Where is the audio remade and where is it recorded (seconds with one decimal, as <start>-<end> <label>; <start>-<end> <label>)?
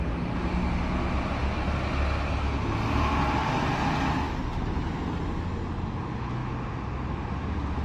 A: 0.0-7.8 recorded